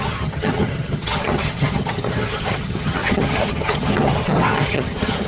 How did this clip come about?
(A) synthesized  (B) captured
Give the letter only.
A